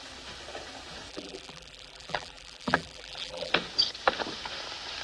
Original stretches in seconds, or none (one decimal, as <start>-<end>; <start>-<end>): 0.0-1.1; 3.5-5.0